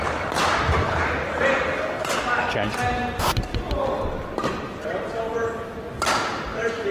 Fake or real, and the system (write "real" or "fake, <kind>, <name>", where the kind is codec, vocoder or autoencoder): real